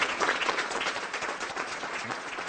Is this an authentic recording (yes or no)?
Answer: no